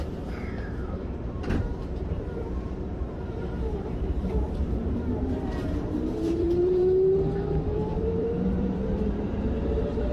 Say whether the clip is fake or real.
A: fake